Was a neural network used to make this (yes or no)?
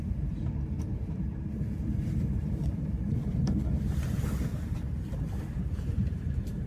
yes